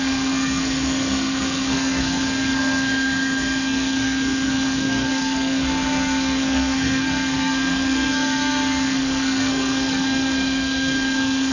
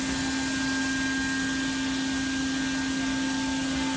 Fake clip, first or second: first